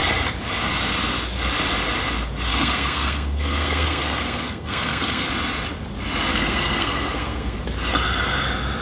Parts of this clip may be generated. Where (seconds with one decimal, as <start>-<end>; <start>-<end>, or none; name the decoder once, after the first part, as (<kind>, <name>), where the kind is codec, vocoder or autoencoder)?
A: 2.5-5.3 (codec, SNAC); 6.3-7.6